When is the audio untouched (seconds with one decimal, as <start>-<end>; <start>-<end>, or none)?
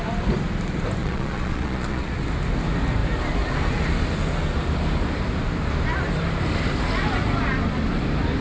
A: 0.0-1.0; 2.1-8.4